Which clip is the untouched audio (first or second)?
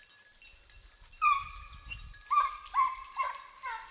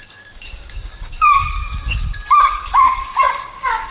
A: first